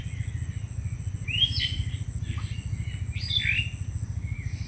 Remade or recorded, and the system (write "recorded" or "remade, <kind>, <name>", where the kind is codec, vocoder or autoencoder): recorded